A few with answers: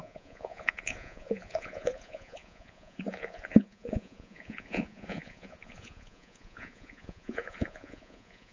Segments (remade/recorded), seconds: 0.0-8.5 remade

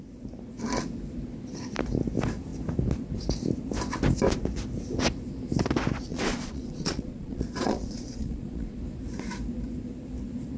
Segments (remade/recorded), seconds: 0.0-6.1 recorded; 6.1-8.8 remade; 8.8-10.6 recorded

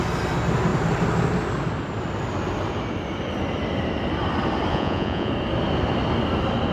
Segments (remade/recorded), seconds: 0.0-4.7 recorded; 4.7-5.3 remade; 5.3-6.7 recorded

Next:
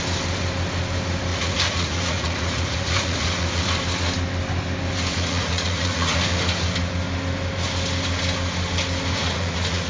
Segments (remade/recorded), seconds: 0.0-1.3 recorded; 1.3-3.6 remade; 3.6-5.1 recorded; 5.1-6.2 remade; 6.2-9.2 recorded; 9.2-9.9 remade

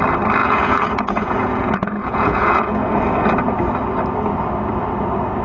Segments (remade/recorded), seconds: 0.0-0.4 recorded; 0.4-2.9 remade; 2.9-5.4 recorded

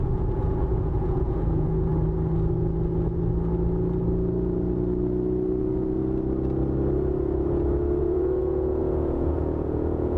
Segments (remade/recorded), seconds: 0.0-1.9 remade; 1.9-5.6 recorded; 5.6-6.0 remade; 6.0-8.0 recorded; 8.0-10.2 remade

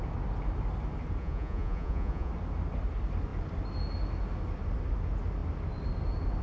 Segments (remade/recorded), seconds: 0.0-1.2 recorded; 1.2-2.3 remade; 2.3-6.4 recorded